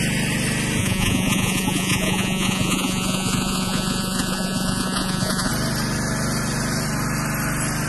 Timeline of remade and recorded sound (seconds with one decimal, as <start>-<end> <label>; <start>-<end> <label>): 0.0-0.8 recorded; 0.8-5.5 remade; 5.5-7.9 recorded